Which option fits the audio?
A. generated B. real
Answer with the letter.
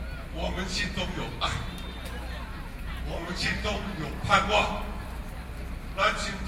B